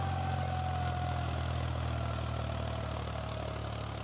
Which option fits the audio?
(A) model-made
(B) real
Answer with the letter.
B